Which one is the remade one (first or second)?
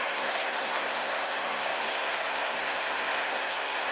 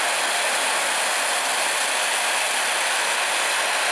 first